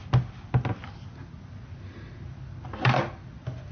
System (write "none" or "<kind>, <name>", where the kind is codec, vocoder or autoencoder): none